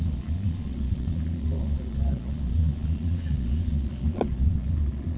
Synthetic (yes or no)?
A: yes